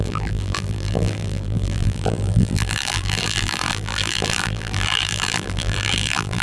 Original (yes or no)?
no